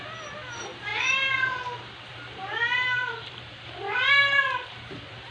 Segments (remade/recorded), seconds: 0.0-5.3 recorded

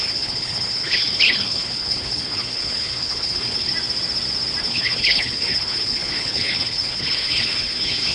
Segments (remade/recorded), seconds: 0.0-3.7 remade; 3.7-4.6 recorded; 4.6-8.1 remade

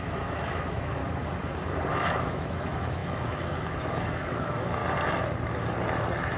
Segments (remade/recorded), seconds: 0.0-1.0 remade; 1.0-1.9 recorded; 1.9-4.8 remade; 4.8-6.4 recorded

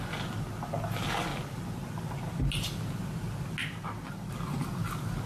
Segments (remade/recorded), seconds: 0.0-1.3 recorded; 1.3-2.1 remade; 2.1-5.3 recorded

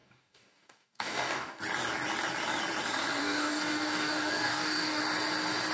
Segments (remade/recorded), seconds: 0.0-1.6 remade; 1.6-3.2 recorded; 3.2-5.0 remade; 5.0-5.7 recorded

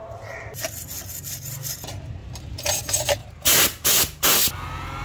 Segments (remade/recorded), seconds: 0.0-0.6 remade; 0.6-2.2 recorded; 2.2-2.8 remade; 2.8-3.2 recorded; 3.2-3.9 remade; 3.9-5.0 recorded